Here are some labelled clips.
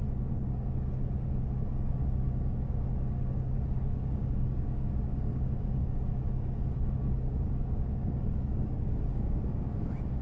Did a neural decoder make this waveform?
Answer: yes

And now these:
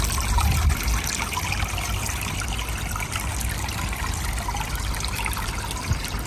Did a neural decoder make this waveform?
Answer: no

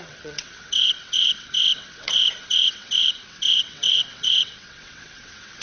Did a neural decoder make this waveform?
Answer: yes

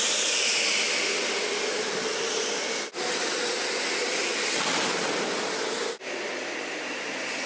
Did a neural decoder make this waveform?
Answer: no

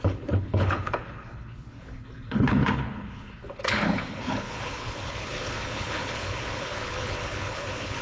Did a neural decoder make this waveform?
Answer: yes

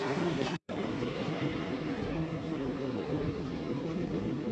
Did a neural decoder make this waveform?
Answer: yes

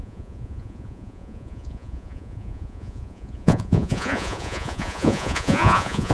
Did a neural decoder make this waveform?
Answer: yes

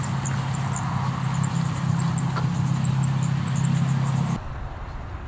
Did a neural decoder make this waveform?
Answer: no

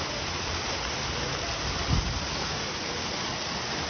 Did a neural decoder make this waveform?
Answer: no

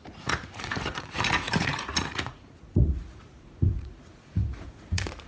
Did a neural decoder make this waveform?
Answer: yes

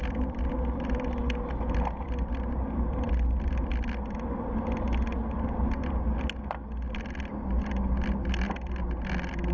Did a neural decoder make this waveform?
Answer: no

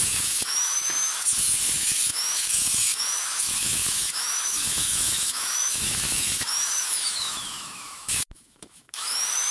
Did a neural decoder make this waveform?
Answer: yes